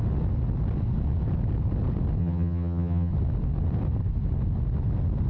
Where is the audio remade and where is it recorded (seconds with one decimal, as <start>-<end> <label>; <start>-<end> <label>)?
0.0-2.2 recorded; 2.2-3.1 remade; 3.1-5.3 recorded